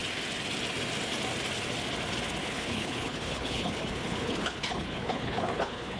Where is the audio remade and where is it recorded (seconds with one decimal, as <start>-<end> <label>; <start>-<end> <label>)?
0.0-2.4 recorded; 2.4-6.0 remade